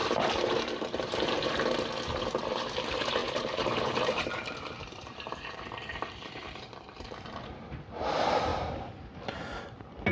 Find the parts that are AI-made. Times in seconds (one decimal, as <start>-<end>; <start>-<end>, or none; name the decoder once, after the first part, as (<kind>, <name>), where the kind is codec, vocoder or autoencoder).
0.0-1.1 (vocoder, BigVGAN v2); 3.2-7.4; 8.5-9.6